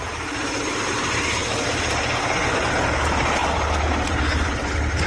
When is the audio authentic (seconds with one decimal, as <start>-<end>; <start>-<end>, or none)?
3.4-4.1